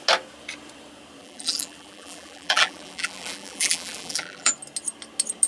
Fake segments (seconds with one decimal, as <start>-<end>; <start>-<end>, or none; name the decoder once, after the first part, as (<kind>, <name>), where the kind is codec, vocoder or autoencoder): 1.2-4.5 (vocoder, BigVGAN v2)